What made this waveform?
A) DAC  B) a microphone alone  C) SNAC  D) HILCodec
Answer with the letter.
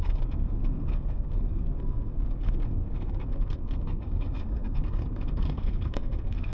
C